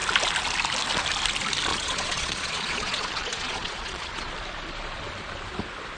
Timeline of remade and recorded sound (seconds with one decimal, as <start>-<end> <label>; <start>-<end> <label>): 0.0-1.7 recorded; 1.7-4.3 remade; 4.3-6.0 recorded